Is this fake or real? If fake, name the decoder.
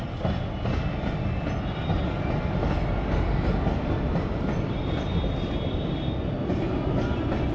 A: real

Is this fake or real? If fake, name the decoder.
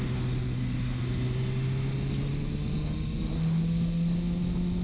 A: real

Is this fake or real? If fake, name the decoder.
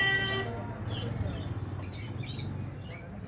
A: real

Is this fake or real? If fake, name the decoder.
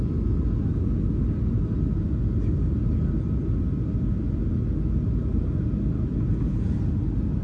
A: real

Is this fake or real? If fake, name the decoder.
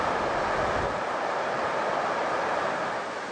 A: fake, vocoder, BigVGAN v2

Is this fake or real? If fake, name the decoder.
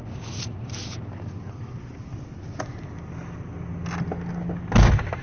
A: real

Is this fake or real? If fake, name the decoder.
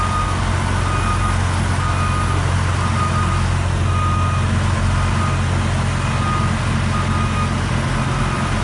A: real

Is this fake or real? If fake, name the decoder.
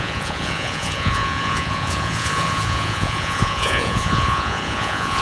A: fake, vocoder, Vocos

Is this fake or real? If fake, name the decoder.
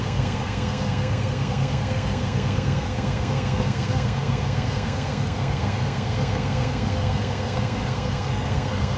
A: fake, codec, SNAC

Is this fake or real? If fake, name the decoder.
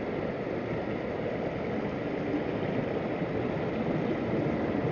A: real